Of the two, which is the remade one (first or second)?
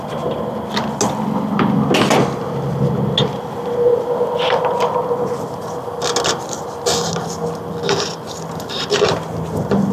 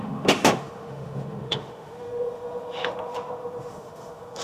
second